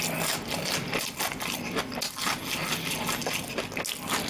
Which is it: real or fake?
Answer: real